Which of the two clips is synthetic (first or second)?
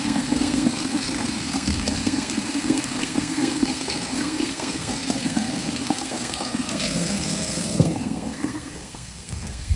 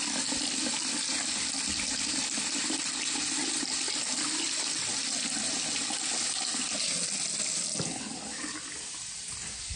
first